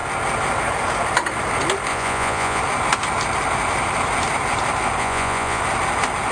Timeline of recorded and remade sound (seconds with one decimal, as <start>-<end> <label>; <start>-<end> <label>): 0.0-1.9 recorded; 1.9-2.6 remade; 2.6-5.0 recorded; 5.0-5.6 remade; 5.6-6.3 recorded